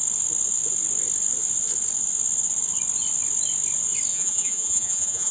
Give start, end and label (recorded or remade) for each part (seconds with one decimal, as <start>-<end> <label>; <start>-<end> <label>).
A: 0.0-4.1 recorded; 4.1-5.3 remade